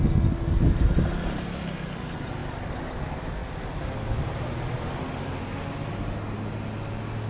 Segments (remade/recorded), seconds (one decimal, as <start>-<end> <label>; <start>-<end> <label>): 0.0-7.3 recorded